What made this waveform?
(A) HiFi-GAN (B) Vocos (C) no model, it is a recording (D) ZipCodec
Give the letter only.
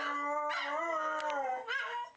C